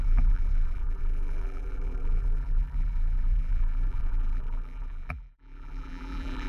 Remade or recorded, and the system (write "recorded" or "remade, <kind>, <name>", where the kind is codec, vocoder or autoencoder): remade, vocoder, BigVGAN v2